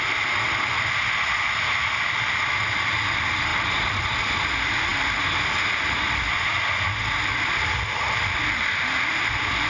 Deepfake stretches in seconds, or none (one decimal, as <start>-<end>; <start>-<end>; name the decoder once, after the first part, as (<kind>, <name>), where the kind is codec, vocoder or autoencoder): none